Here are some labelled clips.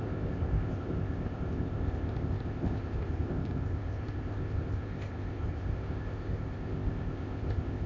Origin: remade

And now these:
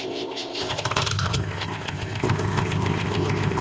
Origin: remade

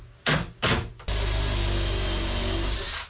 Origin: recorded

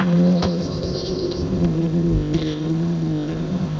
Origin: remade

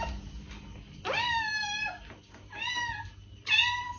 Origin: recorded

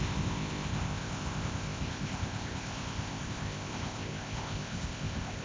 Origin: remade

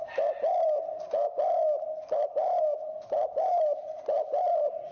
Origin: recorded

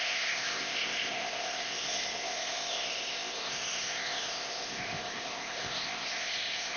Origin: remade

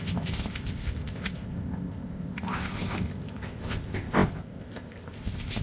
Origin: remade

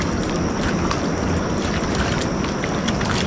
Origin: recorded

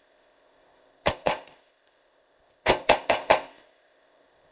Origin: remade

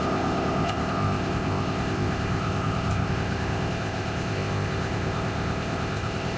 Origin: remade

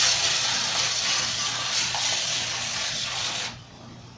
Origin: recorded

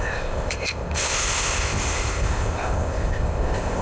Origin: remade